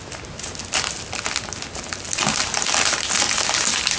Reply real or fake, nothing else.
real